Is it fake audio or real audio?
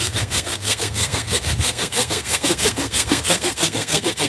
fake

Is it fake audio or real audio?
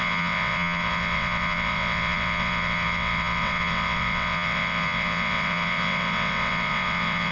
fake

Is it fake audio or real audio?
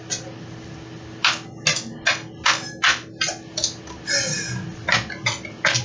real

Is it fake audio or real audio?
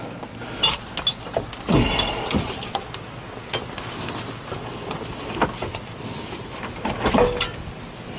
real